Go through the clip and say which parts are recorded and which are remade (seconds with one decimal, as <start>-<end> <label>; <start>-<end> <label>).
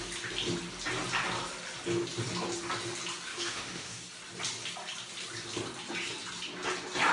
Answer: 0.0-3.3 recorded; 3.3-4.0 remade; 4.0-7.1 recorded